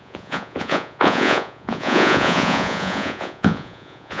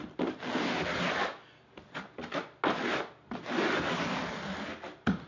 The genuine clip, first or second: second